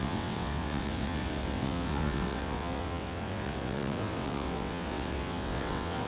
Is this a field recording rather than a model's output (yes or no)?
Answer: no